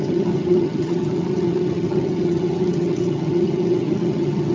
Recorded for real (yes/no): no